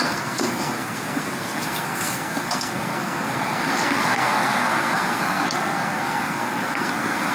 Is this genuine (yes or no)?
no